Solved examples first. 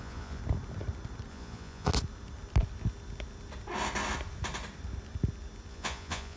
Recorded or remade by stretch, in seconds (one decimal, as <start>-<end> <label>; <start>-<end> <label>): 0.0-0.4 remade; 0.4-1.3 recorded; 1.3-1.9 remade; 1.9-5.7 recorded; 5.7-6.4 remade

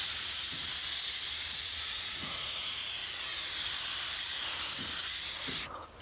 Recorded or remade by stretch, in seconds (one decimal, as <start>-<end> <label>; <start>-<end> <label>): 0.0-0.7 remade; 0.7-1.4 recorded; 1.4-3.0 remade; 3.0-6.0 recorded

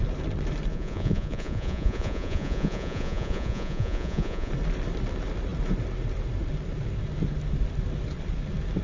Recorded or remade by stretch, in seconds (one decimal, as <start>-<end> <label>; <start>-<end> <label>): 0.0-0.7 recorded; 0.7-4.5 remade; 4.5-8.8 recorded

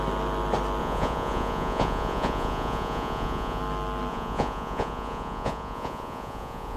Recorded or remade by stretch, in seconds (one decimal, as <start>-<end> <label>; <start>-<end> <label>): 0.0-0.8 recorded; 0.8-3.6 remade; 3.6-4.1 recorded; 4.1-6.8 remade

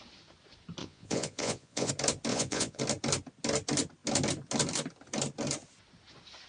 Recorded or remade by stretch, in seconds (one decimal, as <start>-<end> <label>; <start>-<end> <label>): 0.0-0.8 recorded; 0.8-1.9 remade; 1.9-2.3 recorded; 2.3-2.8 remade; 2.8-6.5 recorded